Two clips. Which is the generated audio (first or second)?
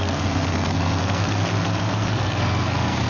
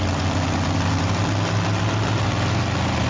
first